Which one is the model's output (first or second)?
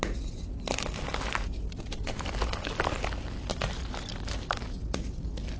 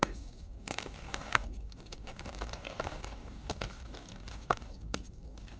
second